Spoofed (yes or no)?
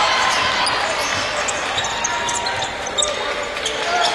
no